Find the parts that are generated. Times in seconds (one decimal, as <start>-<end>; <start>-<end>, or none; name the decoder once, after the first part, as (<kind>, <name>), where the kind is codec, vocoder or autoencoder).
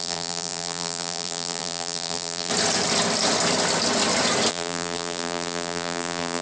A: 0.0-2.5 (vocoder, BigVGAN v2); 4.5-6.4